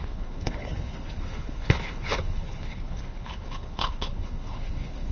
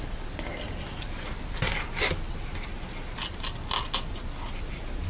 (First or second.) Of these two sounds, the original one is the second